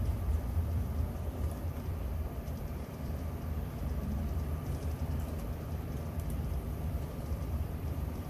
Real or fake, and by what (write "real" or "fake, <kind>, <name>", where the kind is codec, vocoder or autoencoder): fake, vocoder, BigVGAN v2